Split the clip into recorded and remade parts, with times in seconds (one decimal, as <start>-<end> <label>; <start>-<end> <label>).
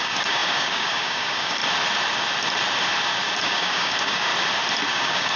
0.0-1.6 remade; 1.6-3.4 recorded; 3.4-4.3 remade; 4.3-4.9 recorded; 4.9-5.4 remade